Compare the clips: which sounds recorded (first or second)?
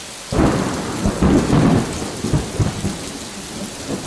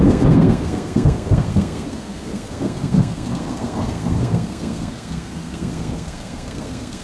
first